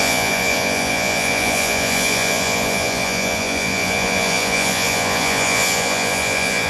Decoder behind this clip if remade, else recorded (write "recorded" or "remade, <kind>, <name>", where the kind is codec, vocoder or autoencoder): remade, vocoder, Vocos